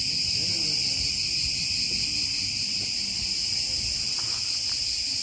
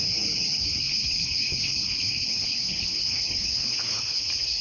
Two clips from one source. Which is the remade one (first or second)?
second